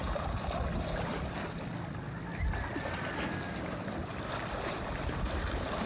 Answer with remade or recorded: recorded